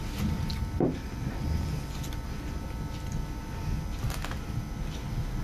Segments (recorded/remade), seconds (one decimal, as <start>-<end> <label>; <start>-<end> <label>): 0.0-5.4 recorded